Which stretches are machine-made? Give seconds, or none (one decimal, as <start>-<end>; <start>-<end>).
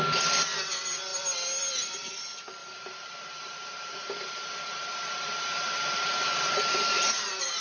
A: 2.6-7.6